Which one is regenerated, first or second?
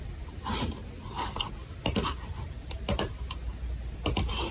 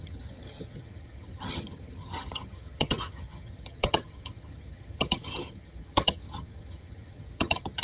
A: second